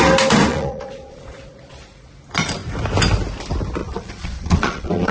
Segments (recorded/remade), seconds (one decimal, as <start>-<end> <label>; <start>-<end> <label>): 0.0-0.5 recorded; 0.5-2.1 remade; 2.1-3.8 recorded; 3.8-5.1 remade